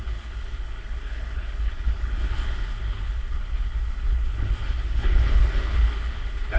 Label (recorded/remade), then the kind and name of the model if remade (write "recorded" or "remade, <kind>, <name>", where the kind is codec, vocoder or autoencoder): remade, codec, HILCodec